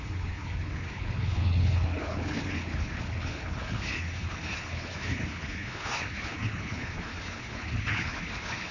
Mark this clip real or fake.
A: fake